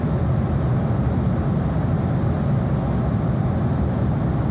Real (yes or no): yes